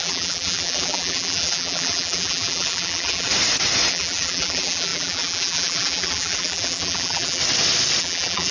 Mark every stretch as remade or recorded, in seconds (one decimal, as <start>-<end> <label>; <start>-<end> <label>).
0.0-3.3 remade; 3.3-3.9 recorded; 3.9-7.4 remade; 7.4-8.0 recorded; 8.0-8.5 remade